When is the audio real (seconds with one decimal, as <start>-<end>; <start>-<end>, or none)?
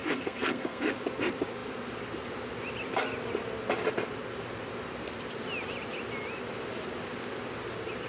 0.9-8.1